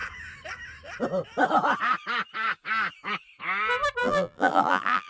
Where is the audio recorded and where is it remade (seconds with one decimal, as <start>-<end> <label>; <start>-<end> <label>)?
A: 0.0-4.0 recorded; 4.0-5.1 remade